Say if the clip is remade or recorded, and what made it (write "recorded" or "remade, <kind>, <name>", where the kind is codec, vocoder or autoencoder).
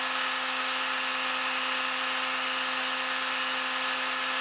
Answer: recorded